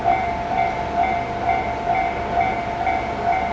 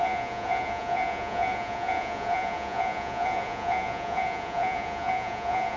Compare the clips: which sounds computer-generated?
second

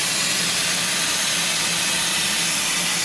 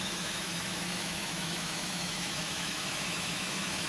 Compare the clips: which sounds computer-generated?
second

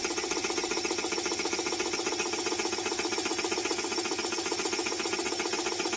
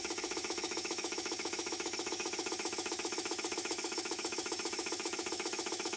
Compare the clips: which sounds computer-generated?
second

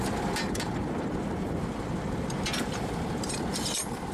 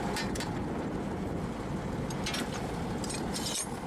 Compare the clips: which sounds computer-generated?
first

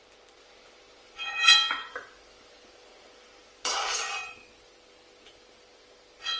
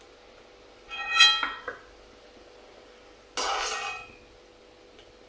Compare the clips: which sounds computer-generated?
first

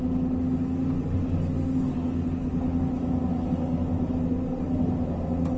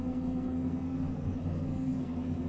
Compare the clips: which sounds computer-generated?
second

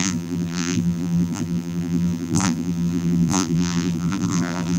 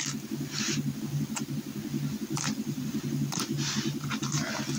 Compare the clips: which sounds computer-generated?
first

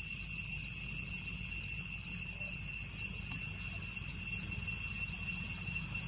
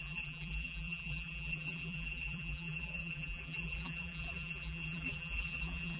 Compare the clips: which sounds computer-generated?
second